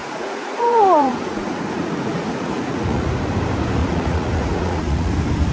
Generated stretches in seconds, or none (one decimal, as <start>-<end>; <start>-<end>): 0.0-3.1; 3.8-5.1